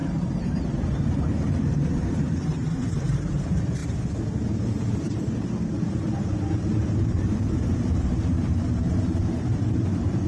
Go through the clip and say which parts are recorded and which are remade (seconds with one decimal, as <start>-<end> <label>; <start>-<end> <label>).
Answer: 0.0-3.8 remade; 3.8-4.4 recorded; 4.4-10.3 remade